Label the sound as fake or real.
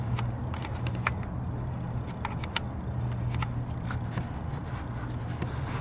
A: real